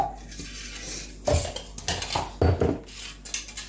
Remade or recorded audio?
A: recorded